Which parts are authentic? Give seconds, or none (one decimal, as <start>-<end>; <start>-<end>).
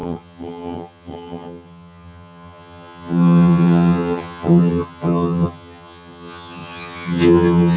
none